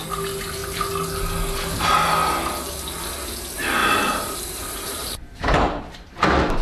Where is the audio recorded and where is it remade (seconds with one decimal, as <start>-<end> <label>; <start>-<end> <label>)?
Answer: 0.0-3.8 recorded; 3.8-5.8 remade; 5.8-6.6 recorded